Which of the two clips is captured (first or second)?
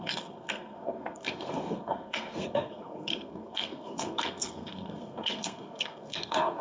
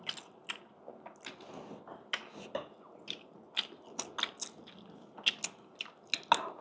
second